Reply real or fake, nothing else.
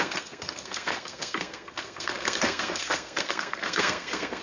fake